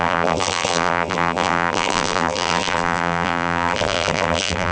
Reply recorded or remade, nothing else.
remade